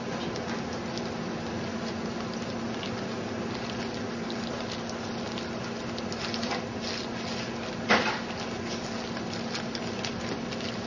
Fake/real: real